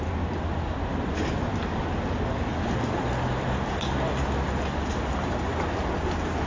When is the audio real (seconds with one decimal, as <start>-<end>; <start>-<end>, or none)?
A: 0.0-6.5